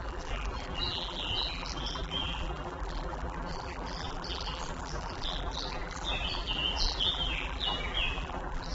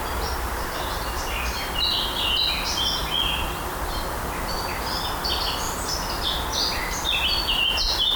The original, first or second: second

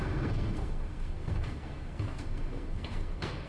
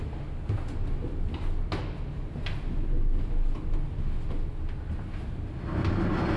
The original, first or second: second